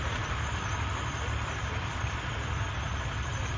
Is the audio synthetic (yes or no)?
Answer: no